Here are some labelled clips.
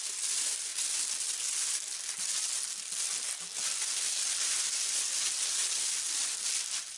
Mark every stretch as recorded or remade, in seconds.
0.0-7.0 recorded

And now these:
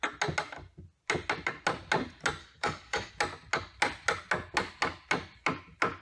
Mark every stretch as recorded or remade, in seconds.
0.0-2.4 recorded; 2.4-3.1 remade; 3.1-6.0 recorded